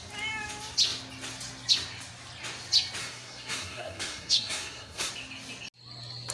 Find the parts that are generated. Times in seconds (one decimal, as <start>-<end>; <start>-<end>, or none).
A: 3.0-5.1